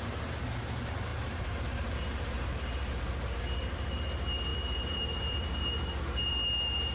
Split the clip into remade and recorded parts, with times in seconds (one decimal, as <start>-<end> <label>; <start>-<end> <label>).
0.0-6.9 remade